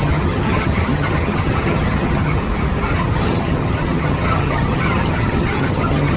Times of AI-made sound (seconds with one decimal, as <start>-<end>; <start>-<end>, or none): 0.0-2.4; 2.9-6.2